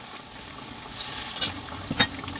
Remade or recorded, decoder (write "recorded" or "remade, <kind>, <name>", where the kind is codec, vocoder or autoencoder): recorded